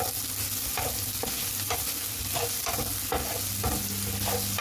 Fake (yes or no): no